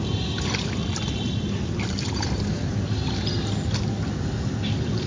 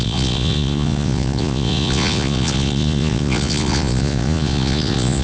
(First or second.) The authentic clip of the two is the first